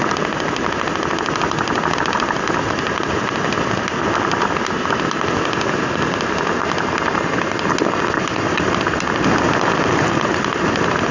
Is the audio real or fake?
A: real